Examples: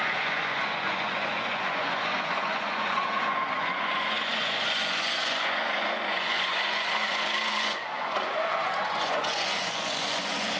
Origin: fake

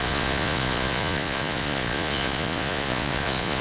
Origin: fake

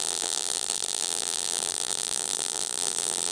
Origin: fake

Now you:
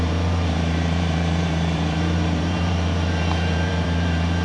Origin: fake